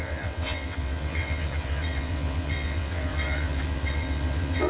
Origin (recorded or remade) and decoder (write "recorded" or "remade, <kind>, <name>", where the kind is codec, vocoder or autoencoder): remade, vocoder, WaveNeXt